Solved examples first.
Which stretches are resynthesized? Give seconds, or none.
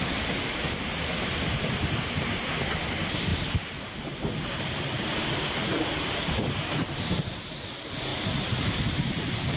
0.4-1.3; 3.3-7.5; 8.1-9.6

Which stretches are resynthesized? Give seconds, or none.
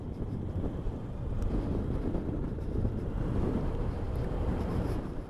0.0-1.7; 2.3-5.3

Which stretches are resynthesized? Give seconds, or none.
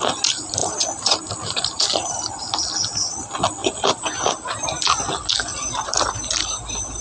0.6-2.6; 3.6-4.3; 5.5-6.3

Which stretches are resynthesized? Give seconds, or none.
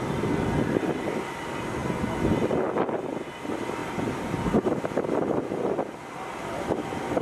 0.0-1.8; 3.3-7.2